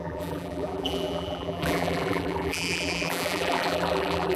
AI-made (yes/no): yes